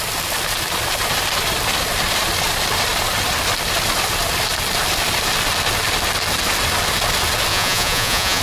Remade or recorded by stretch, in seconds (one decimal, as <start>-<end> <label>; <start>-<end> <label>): 0.0-7.5 recorded; 7.5-8.4 remade